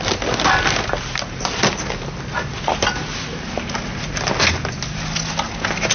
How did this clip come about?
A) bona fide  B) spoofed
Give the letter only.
A